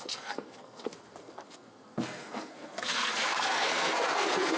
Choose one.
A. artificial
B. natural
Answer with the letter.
A